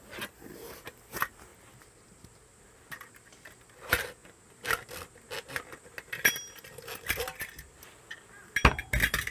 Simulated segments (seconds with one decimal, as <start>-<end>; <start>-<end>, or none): none

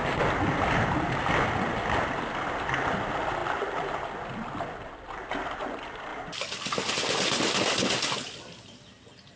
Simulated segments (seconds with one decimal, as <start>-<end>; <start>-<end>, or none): none

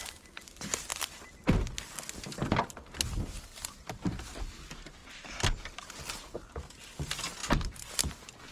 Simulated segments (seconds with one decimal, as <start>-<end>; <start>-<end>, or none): none